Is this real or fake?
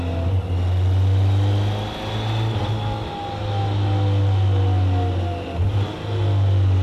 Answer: real